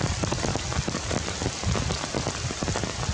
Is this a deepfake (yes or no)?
no